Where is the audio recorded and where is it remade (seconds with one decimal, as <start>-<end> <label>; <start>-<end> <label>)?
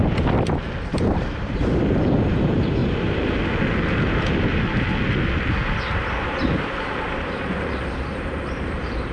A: 0.0-0.9 recorded; 0.9-2.8 remade; 2.8-5.9 recorded; 5.9-9.1 remade